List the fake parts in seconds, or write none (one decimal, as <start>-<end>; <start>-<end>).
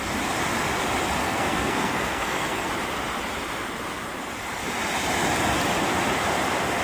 1.2-2.7